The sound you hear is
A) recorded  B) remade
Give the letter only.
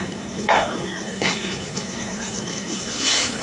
B